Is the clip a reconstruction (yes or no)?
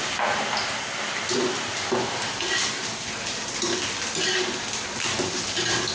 no